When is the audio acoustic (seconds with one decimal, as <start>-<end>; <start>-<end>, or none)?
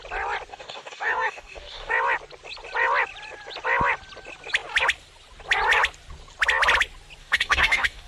0.0-0.5; 1.9-7.2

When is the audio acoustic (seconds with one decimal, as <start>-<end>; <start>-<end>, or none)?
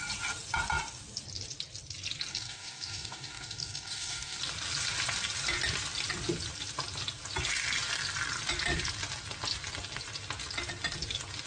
0.0-2.3; 4.4-11.5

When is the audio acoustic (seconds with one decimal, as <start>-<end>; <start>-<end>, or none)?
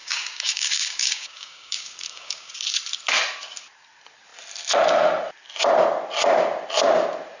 2.5-7.4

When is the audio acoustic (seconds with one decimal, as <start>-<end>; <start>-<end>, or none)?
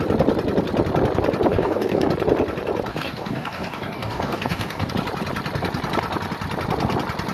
0.0-1.5; 2.1-2.9; 4.9-7.3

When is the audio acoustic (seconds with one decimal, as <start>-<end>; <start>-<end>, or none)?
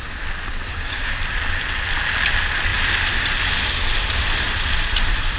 0.0-0.7; 1.2-5.4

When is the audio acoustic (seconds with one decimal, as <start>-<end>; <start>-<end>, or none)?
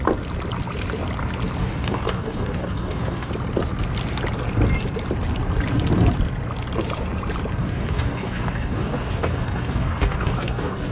0.0-1.6; 3.3-7.6